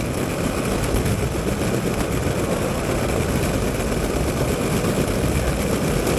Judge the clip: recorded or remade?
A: recorded